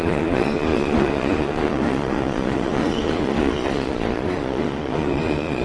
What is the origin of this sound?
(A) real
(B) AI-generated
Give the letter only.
B